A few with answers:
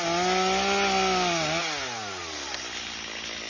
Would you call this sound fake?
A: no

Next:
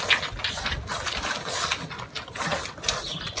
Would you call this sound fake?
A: no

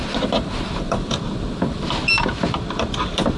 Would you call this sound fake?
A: yes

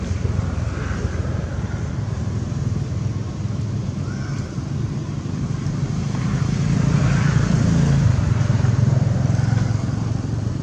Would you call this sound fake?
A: yes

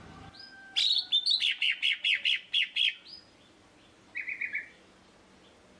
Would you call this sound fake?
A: no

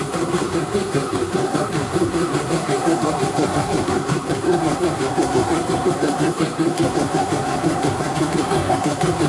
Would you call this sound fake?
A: yes